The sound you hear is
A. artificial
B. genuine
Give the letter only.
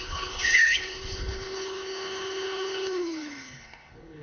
A